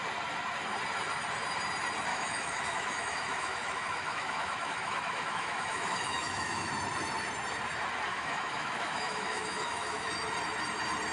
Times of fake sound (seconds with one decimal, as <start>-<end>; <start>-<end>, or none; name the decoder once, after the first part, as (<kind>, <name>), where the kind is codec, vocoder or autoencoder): 2.1-6.7 (autoencoder, DAC-VAE); 8.1-10.1